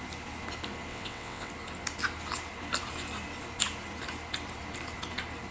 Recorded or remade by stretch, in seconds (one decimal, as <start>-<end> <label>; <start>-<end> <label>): 0.0-0.9 recorded; 0.9-1.5 remade; 1.5-5.5 recorded

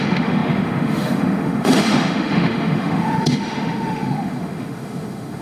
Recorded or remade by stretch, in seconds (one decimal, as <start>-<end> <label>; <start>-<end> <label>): 0.0-5.4 remade

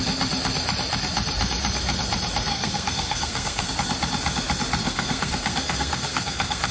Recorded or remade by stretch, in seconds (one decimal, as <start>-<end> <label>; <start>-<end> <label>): 0.0-2.5 recorded; 2.5-3.7 remade; 3.7-4.8 recorded; 4.8-6.7 remade

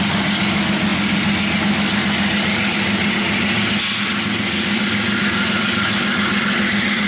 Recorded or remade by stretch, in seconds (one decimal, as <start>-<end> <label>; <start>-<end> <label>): 0.0-7.1 recorded